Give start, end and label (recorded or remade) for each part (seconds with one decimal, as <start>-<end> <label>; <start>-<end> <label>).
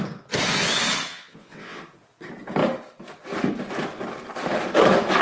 0.0-1.1 recorded; 1.1-1.8 remade; 1.8-5.2 recorded